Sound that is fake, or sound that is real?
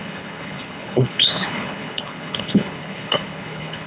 fake